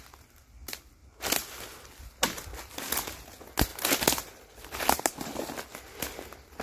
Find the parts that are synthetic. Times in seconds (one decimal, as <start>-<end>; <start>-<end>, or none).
3.7-4.8